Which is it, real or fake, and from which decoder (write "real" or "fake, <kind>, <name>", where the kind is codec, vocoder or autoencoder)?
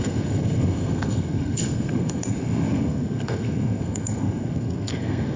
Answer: fake, codec, SNAC